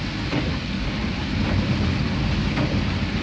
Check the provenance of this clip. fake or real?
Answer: real